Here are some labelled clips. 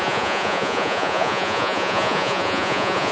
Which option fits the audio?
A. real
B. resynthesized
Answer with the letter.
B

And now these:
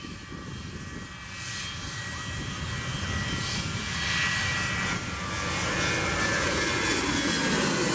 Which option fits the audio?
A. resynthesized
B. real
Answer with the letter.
B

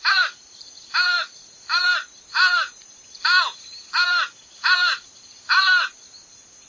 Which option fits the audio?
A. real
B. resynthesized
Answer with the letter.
A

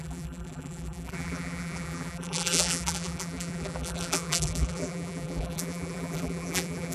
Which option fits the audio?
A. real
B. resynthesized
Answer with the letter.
B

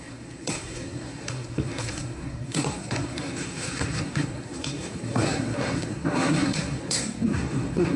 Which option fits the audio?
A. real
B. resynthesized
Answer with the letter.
B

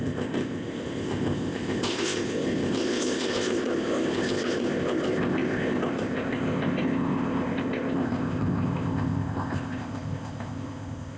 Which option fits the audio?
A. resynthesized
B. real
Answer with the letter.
A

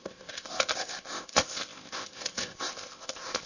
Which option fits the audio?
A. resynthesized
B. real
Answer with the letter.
A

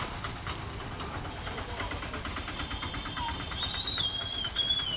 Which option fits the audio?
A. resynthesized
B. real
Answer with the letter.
A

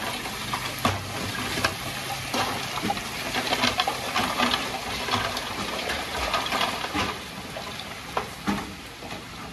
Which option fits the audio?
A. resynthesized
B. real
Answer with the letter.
B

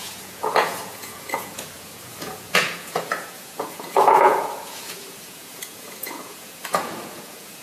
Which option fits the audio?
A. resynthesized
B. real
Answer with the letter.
A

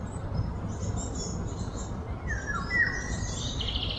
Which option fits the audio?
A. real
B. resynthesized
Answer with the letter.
A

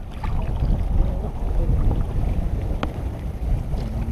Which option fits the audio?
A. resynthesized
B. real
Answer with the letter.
B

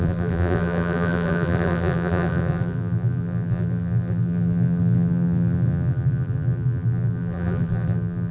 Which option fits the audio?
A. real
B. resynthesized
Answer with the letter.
B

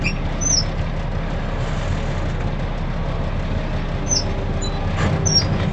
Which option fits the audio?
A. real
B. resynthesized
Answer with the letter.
A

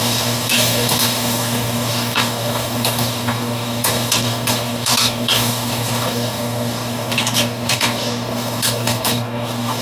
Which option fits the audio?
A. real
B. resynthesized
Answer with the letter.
B